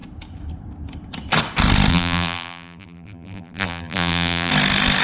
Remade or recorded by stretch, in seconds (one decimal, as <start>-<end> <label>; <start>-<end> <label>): 0.0-1.9 recorded; 1.9-4.5 remade; 4.5-5.0 recorded